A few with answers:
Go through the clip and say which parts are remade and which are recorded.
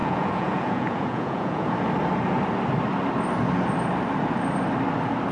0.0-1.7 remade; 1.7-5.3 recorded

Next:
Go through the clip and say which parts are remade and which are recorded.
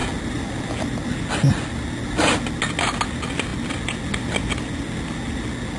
0.0-5.8 recorded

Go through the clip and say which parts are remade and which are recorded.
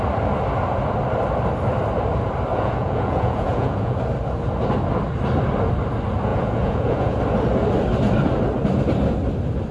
0.0-2.5 recorded; 2.5-4.0 remade; 4.0-6.3 recorded; 6.3-7.2 remade; 7.2-9.7 recorded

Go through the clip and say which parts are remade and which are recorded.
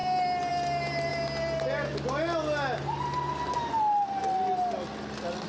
0.0-5.5 recorded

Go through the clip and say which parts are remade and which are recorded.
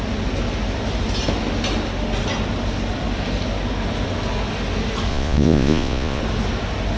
0.0-5.1 recorded; 5.1-6.2 remade; 6.2-7.0 recorded